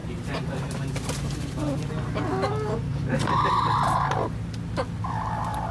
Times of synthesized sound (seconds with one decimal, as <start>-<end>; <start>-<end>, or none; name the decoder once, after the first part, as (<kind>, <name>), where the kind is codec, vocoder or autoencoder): none